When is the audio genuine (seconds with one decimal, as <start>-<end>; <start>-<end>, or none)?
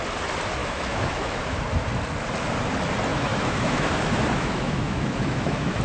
0.0-0.6; 1.6-3.1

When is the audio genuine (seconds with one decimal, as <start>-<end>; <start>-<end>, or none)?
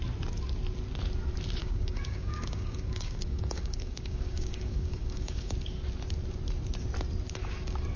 0.0-1.6; 5.5-8.0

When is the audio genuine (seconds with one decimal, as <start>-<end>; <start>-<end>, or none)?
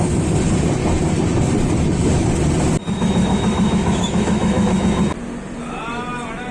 0.0-2.8; 4.8-6.5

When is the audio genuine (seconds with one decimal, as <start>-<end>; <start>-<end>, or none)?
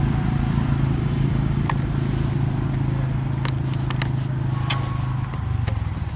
0.0-1.0; 1.6-6.2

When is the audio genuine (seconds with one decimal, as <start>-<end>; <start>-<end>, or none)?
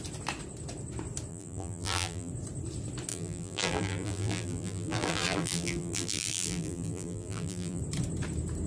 0.0-1.3; 2.3-3.1; 7.8-8.7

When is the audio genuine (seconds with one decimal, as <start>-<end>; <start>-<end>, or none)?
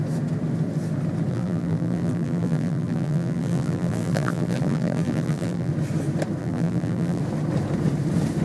0.0-1.3; 5.7-6.4; 7.2-8.4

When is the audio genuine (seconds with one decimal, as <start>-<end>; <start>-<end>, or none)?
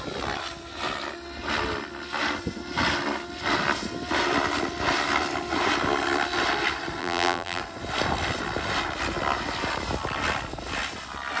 0.0-7.0; 7.6-11.4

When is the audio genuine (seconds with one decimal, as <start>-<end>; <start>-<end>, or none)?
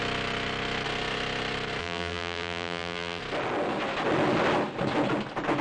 0.0-1.8; 3.2-5.6